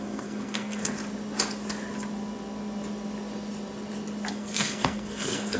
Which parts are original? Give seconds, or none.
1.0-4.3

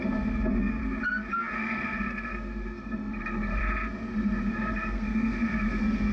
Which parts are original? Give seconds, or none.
0.8-1.3; 3.6-4.5

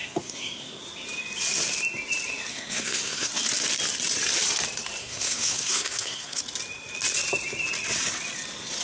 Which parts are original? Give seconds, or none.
0.8-2.5; 3.3-5.0; 6.4-8.8

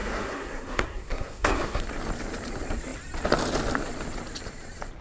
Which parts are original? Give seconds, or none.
1.8-5.0

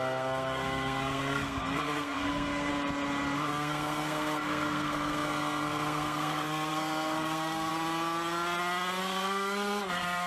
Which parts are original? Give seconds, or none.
2.7-3.5; 7.7-9.0

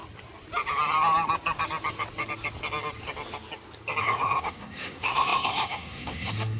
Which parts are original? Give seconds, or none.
0.0-4.0